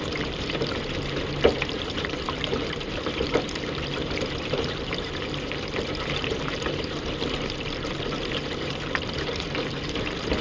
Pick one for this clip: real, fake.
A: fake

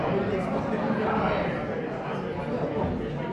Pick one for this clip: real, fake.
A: real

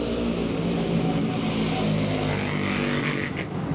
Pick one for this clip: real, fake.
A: real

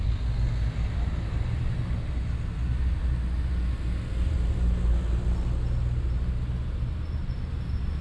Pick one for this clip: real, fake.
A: real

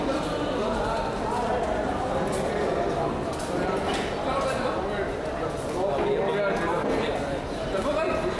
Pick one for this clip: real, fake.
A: real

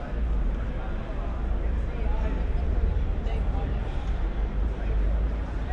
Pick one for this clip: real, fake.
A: fake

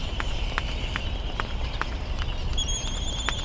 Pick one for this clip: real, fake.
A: real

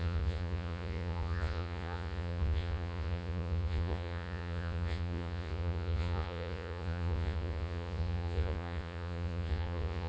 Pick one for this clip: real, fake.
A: fake